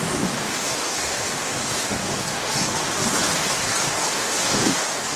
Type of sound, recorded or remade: remade